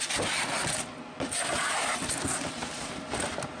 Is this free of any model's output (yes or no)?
yes